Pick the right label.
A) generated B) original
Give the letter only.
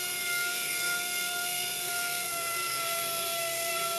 A